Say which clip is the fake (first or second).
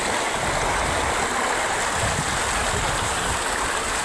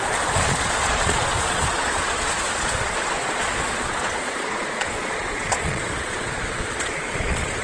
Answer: second